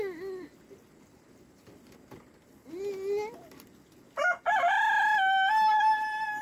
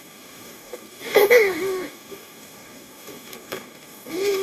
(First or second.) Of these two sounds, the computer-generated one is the second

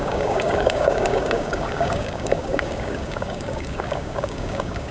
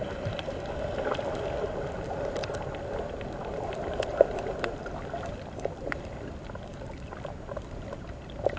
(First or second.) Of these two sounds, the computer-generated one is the first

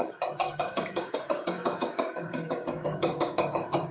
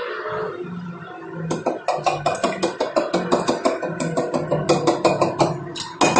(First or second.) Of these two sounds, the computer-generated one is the first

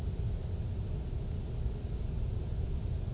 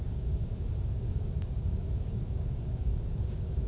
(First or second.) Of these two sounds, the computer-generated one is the second